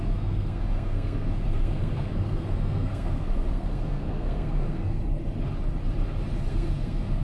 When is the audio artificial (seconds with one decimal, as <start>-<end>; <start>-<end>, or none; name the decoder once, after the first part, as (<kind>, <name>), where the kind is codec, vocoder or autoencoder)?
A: 0.0-5.0 (codec, SNAC); 6.5-7.2